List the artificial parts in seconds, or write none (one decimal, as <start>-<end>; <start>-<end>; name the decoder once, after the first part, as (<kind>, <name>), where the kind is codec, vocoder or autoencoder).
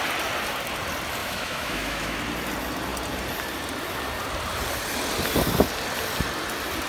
1.2-2.2 (autoencoder, DAC-VAE)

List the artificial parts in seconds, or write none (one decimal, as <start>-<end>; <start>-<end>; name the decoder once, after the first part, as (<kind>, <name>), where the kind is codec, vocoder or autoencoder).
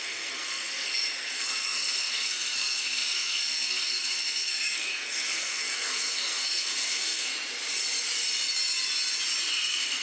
0.0-7.3 (codec, SNAC); 9.5-10.0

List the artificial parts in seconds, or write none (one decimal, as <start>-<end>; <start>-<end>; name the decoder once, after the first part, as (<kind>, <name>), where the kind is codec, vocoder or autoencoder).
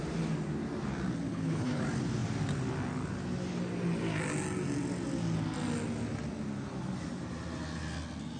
1.3-1.8 (codec, HILCodec)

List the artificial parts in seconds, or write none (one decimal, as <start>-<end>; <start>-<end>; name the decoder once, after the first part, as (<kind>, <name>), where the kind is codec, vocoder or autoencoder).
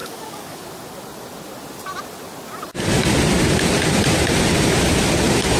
0.0-0.6 (codec, DAC)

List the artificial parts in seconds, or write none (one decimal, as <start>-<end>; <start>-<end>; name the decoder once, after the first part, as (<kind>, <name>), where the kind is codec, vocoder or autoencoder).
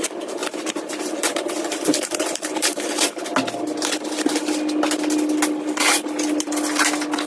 0.0-3.3 (vocoder, BigVGAN v2)